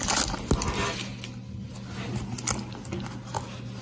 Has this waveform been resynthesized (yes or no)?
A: no